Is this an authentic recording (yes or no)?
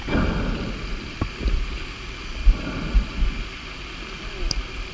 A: yes